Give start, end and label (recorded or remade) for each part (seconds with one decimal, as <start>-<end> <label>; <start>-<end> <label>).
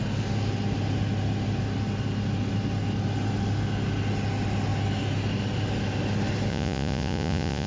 0.0-6.5 recorded; 6.5-7.7 remade